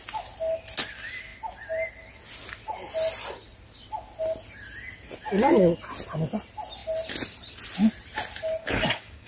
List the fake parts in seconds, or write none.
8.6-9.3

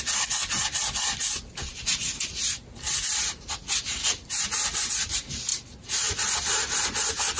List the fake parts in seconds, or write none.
none

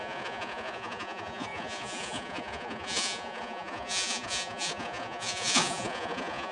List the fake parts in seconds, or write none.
0.0-6.5

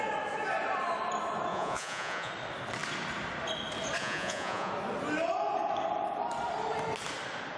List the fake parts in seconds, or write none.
1.5-2.3; 4.0-4.7

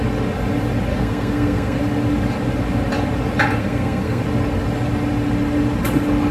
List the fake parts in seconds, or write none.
0.9-1.8; 3.6-4.2